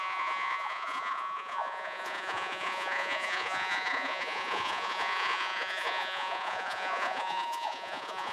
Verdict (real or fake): fake